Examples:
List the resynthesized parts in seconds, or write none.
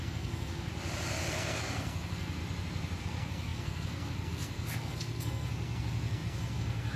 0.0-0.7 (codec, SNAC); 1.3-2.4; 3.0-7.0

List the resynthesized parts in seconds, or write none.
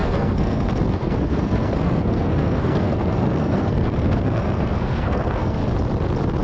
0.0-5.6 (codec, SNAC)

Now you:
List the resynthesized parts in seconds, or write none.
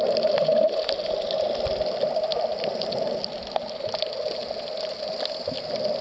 none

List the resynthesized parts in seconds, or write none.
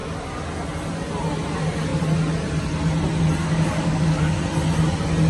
3.4-4.4 (codec, DAC)